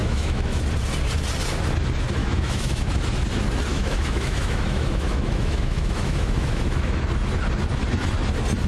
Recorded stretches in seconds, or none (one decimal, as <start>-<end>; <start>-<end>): 0.6-2.2; 2.9-3.7; 7.0-8.7